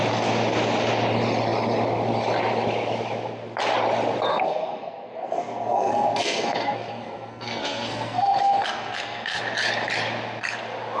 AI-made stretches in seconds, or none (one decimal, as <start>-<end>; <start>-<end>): 4.3-9.4